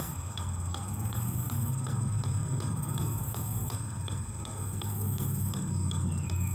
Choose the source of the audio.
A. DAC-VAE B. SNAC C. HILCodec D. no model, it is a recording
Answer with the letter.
B